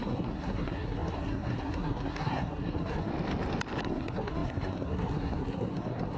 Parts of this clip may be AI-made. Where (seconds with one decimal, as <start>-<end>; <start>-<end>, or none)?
0.0-3.1; 3.8-6.2